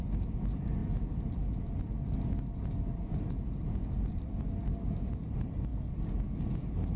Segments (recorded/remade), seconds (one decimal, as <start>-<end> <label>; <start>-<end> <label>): 0.0-7.0 recorded